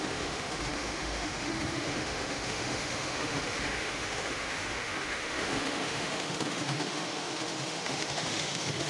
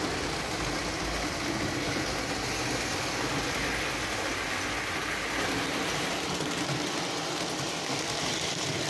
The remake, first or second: first